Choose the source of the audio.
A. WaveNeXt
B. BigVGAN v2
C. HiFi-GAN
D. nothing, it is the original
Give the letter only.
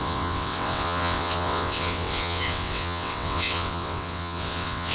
A